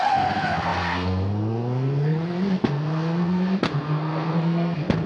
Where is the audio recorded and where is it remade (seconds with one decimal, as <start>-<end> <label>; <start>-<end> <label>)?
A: 0.0-5.1 remade